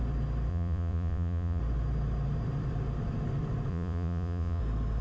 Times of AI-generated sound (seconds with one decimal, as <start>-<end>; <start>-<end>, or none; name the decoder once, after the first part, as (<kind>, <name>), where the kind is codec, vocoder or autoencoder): 0.5-1.6 (vocoder, Vocos); 3.7-4.6